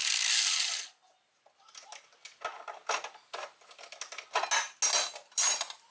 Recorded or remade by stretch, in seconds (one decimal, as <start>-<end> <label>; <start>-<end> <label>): 0.0-5.9 recorded